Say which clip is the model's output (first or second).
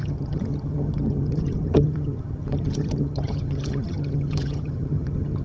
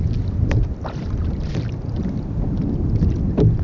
first